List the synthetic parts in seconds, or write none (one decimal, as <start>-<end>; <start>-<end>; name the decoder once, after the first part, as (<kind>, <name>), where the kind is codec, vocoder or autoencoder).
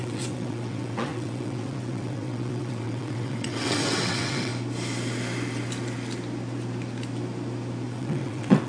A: 0.0-4.5 (vocoder, WaveNeXt); 7.9-8.7